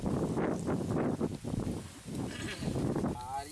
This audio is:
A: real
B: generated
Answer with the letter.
A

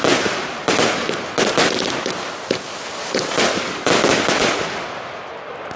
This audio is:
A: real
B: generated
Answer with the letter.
A